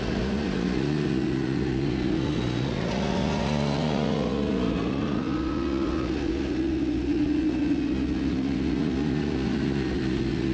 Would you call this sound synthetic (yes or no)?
yes